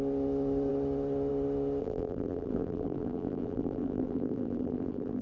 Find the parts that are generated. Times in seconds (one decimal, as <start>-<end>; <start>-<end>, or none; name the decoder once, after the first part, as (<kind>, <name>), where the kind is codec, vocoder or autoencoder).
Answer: 1.8-5.2 (vocoder, BigVGAN v2)